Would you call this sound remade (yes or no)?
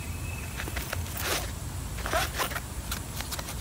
no